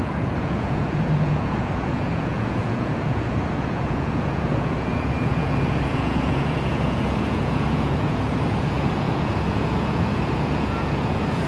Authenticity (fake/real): fake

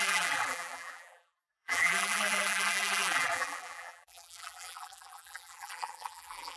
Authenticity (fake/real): fake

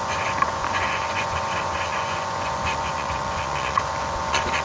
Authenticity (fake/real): fake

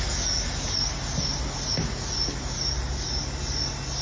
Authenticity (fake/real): real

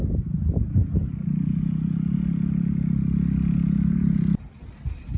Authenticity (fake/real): real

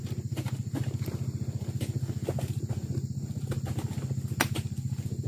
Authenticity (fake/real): real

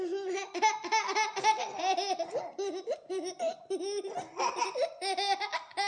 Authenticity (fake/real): real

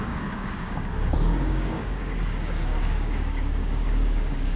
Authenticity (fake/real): fake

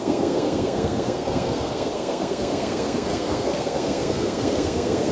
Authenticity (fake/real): fake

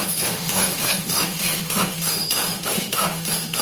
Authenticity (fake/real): fake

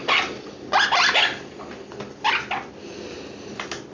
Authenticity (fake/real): real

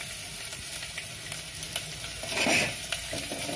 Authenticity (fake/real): real